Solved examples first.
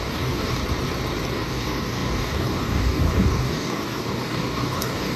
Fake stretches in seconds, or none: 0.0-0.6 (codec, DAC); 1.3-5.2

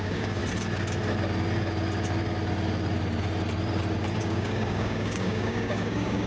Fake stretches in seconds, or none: 0.0-0.4 (codec, DAC); 4.2-6.3

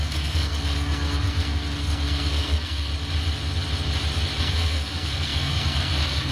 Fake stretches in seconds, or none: 0.0-2.9 (codec, SNAC); 4.4-6.3

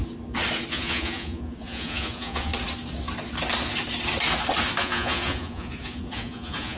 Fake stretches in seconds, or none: 0.7-2.5 (vocoder, Vocos); 4.8-6.8

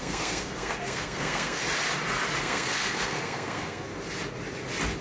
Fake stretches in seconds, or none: 0.0-1.6 (codec, SNAC); 2.4-3.9

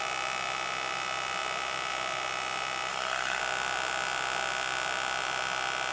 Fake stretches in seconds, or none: 2.9-3.4 (codec, SNAC)

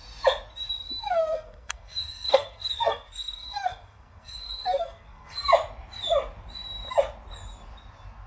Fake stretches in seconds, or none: 1.0-5.5 (codec, SNAC)

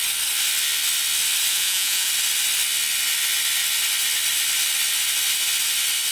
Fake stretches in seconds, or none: 1.5-2.1 (vocoder, Vocos)